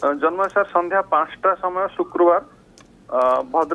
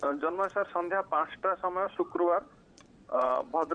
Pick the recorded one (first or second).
first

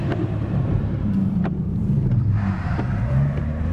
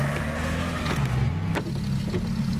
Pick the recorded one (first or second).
second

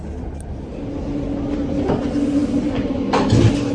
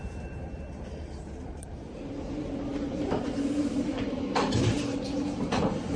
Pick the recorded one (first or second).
first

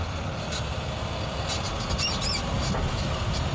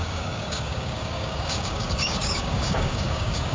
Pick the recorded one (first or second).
first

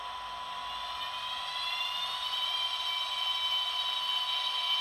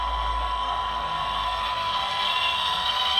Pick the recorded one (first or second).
first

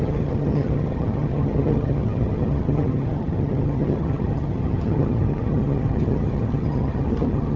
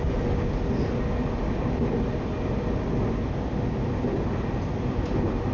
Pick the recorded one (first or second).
second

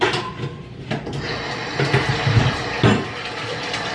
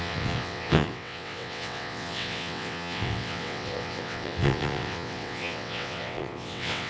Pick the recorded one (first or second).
first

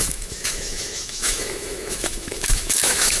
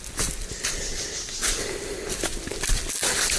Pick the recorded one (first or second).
second